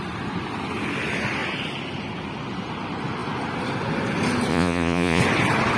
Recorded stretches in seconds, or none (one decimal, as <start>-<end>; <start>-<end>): 0.0-4.5; 5.2-5.8